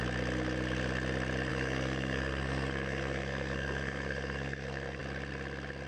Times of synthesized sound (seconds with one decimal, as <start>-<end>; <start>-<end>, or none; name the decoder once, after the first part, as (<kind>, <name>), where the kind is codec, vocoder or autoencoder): 1.5-5.0 (codec, SNAC)